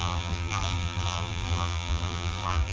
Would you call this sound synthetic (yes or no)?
yes